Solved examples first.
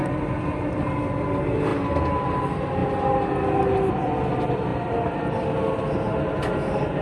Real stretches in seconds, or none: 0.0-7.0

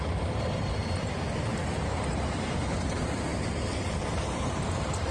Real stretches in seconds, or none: none